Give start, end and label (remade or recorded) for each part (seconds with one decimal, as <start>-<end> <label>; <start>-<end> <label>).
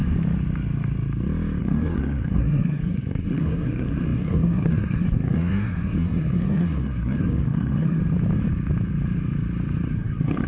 0.0-1.6 recorded; 1.6-8.0 remade; 8.0-9.9 recorded; 9.9-10.5 remade